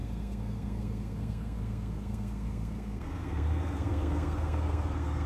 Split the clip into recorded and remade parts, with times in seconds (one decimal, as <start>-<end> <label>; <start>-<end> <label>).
0.0-5.3 remade